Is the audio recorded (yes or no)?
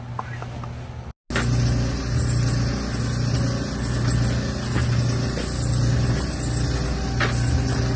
yes